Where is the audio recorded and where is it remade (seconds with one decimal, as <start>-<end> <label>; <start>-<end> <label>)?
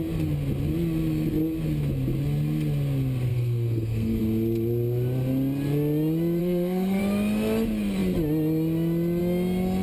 0.0-3.3 recorded; 3.3-4.2 remade; 4.2-6.4 recorded; 6.4-7.0 remade; 7.0-9.8 recorded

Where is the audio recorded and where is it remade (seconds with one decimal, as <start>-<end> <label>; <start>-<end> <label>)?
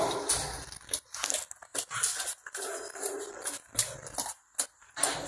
0.0-5.3 recorded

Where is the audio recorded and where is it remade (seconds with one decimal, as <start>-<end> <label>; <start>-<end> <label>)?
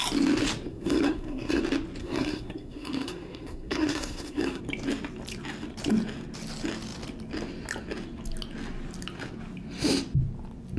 0.0-0.7 recorded; 0.7-1.6 remade; 1.6-2.0 recorded; 2.0-4.6 remade; 4.6-10.8 recorded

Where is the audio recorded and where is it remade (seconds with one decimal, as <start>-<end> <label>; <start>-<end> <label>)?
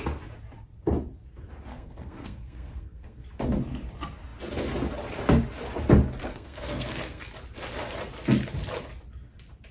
0.0-1.7 recorded; 1.7-3.2 remade; 3.2-6.3 recorded; 6.3-7.2 remade; 7.2-9.7 recorded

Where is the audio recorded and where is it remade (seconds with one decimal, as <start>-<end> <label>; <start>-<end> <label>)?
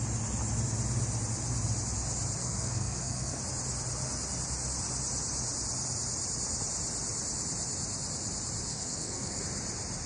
0.0-2.4 recorded; 2.4-3.4 remade; 3.4-8.7 recorded; 8.7-9.4 remade; 9.4-10.1 recorded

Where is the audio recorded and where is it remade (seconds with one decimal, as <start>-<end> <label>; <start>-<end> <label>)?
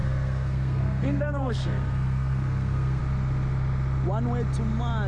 0.0-3.0 remade; 3.0-5.1 recorded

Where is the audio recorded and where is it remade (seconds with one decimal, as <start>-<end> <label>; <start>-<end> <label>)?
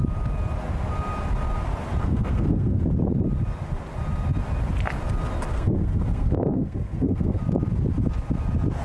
0.0-2.0 recorded; 2.0-2.8 remade; 2.8-5.5 recorded; 5.5-7.4 remade; 7.4-8.8 recorded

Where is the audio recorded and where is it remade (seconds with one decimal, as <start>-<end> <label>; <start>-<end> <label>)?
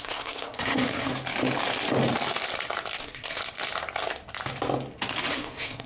0.0-1.1 remade; 1.1-3.0 recorded; 3.0-3.4 remade; 3.4-5.3 recorded; 5.3-5.9 remade